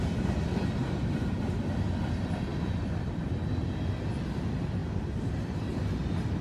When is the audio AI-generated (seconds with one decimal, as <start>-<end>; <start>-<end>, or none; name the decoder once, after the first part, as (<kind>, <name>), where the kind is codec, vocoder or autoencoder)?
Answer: 0.8-1.4 (vocoder, BigVGAN v2); 2.5-3.2